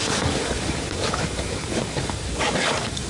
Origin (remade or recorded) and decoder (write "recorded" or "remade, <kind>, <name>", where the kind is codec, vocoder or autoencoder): remade, codec, DAC